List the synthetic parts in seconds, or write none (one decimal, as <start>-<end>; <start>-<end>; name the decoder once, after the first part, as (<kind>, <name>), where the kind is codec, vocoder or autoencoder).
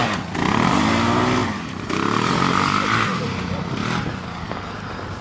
none